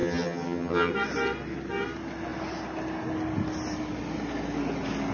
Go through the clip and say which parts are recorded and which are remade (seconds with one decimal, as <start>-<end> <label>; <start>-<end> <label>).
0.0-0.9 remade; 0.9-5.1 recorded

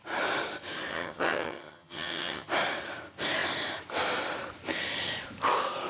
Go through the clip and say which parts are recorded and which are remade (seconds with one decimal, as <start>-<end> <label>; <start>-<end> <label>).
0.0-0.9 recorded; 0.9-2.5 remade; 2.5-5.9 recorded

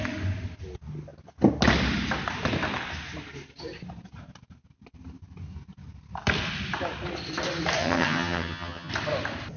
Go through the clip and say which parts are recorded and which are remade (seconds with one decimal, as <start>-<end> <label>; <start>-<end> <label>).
0.0-7.8 recorded; 7.8-8.9 remade; 8.9-9.6 recorded

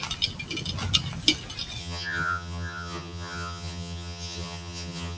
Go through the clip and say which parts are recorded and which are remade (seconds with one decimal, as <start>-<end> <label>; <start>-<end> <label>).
0.0-1.8 recorded; 1.8-5.2 remade

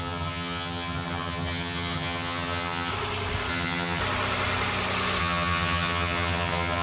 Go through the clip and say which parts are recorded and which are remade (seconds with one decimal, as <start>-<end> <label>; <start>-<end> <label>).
0.0-2.9 remade; 2.9-3.5 recorded; 3.5-4.0 remade; 4.0-5.2 recorded; 5.2-6.8 remade

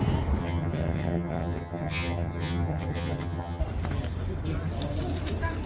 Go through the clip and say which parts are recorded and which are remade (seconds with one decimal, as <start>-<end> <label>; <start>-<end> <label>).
0.0-0.4 recorded; 0.4-3.6 remade; 3.6-5.7 recorded